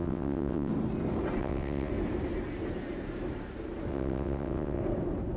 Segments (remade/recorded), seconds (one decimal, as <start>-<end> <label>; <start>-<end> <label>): 0.0-0.7 remade; 0.7-1.4 recorded; 1.4-1.9 remade; 1.9-3.9 recorded; 3.9-4.8 remade; 4.8-5.4 recorded